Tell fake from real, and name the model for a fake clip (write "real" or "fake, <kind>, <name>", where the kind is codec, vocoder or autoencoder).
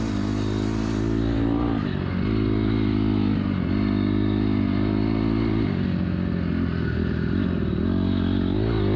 real